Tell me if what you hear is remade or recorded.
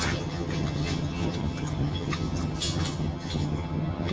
remade